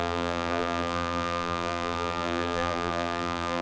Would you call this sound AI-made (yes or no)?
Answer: yes